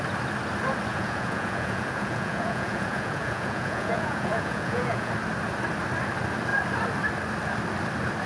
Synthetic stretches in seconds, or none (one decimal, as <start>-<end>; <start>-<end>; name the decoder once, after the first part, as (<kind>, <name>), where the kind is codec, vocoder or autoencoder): 0.9-5.1 (vocoder, Vocos)